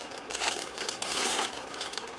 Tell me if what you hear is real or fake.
fake